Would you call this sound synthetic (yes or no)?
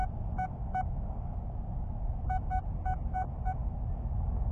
no